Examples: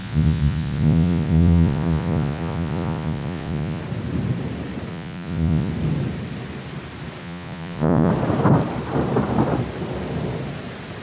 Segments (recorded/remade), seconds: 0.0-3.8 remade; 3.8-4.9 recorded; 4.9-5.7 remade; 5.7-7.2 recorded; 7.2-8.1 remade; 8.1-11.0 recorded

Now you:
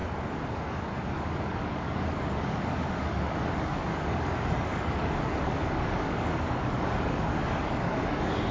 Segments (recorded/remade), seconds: 0.0-0.5 recorded; 0.5-8.5 remade

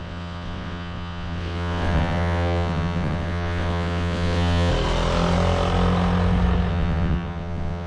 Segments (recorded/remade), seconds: 0.0-4.7 remade; 4.7-6.7 recorded; 6.7-7.9 remade

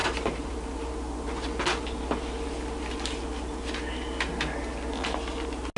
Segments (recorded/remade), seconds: 0.0-0.8 remade; 0.8-5.8 recorded

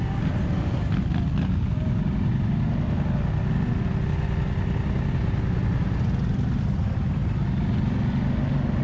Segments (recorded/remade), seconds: 0.0-8.8 recorded

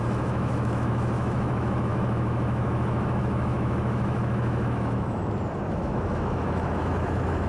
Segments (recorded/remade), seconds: 0.0-5.2 remade; 5.2-5.7 recorded; 5.7-7.5 remade

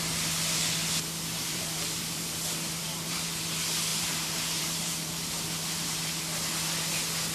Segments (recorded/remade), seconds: 0.0-1.3 recorded; 1.3-3.5 remade; 3.5-3.9 recorded; 3.9-6.2 remade; 6.2-7.3 recorded

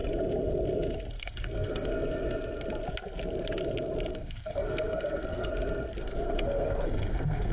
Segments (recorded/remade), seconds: 0.0-1.1 recorded; 1.1-1.9 remade; 1.9-4.1 recorded; 4.1-5.5 remade; 5.5-6.0 recorded; 6.0-7.5 remade